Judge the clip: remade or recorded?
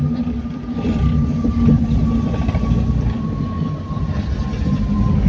remade